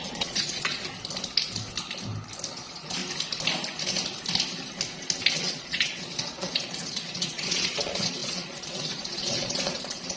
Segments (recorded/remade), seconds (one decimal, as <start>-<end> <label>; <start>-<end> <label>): 0.0-0.8 remade; 0.8-2.5 recorded; 2.5-3.0 remade; 3.0-5.3 recorded; 5.3-10.2 remade